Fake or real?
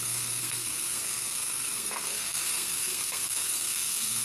fake